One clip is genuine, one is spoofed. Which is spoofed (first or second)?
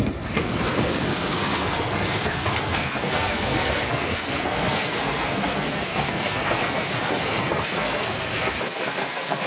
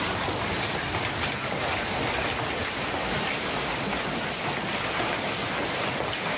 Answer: first